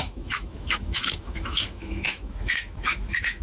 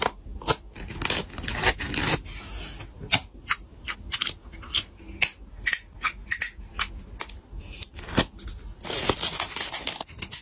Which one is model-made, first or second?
first